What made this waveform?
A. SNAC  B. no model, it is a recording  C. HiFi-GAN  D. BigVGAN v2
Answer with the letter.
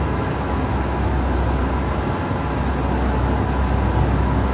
B